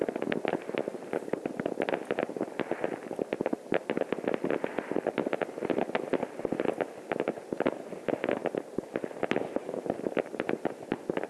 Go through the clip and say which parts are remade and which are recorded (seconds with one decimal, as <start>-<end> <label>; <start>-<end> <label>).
0.0-11.3 recorded

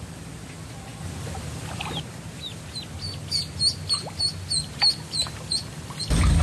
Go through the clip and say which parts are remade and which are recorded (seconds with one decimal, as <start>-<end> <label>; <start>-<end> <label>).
0.0-6.4 recorded